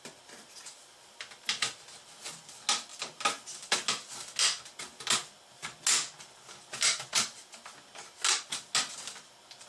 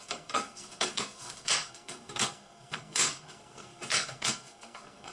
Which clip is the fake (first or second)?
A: second